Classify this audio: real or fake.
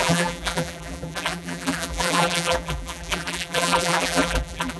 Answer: fake